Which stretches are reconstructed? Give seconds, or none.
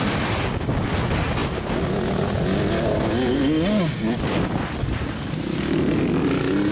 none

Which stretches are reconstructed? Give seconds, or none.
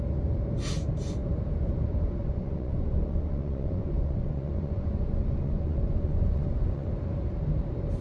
2.2-6.9 (vocoder, Vocos)